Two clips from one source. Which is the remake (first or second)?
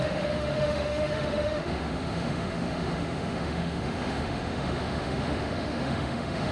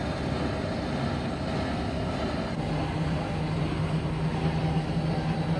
first